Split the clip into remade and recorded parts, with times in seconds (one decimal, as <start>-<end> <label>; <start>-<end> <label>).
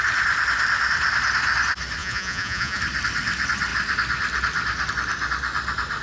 0.0-2.0 recorded; 2.0-2.8 remade; 2.8-6.0 recorded